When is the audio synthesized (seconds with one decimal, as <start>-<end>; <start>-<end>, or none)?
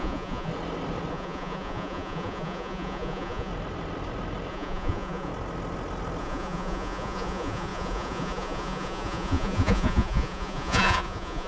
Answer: 0.0-0.5; 1.1-3.5; 4.5-5.3; 6.2-11.5